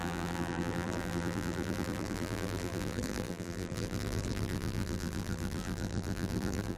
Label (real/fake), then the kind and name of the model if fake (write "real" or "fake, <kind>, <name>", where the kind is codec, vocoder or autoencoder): fake, vocoder, BigVGAN v2